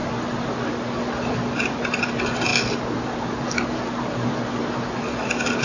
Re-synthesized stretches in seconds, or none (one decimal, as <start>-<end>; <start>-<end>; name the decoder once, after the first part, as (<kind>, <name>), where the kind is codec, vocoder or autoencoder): none